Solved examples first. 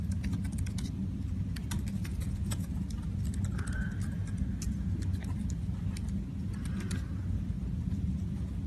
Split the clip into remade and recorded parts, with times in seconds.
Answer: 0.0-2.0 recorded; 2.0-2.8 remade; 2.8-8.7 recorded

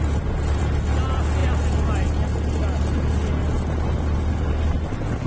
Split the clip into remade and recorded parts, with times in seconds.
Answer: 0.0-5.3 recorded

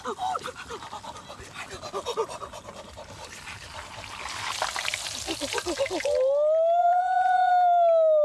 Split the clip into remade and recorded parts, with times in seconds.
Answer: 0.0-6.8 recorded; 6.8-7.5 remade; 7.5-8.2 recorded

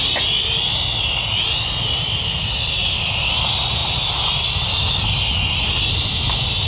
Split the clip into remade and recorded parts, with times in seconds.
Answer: 0.0-6.7 recorded

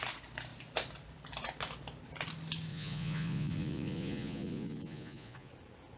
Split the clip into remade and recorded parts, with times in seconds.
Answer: 0.0-2.7 recorded; 2.7-5.5 remade; 5.5-6.0 recorded